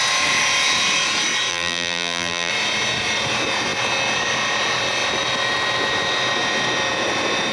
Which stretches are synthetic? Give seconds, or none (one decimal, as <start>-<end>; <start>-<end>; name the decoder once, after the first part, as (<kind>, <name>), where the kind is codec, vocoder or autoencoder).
1.5-2.5 (vocoder, BigVGAN v2)